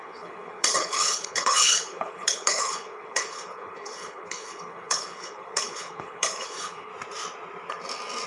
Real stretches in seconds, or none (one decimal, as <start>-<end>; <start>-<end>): 6.9-8.3